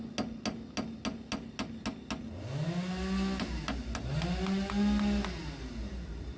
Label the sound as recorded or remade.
recorded